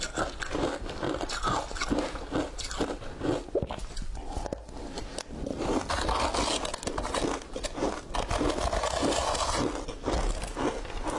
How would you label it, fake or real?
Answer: real